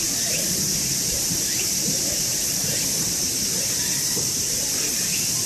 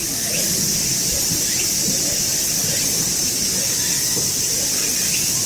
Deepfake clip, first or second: first